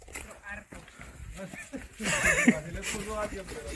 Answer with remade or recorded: recorded